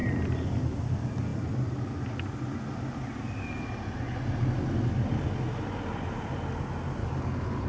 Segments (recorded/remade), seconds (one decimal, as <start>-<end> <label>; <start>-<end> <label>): 0.0-7.0 recorded; 7.0-7.7 remade